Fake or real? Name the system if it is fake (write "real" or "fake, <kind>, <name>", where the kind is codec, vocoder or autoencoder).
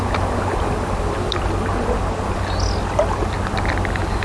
real